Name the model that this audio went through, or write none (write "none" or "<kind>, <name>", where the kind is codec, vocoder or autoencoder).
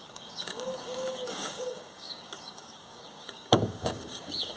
codec, DAC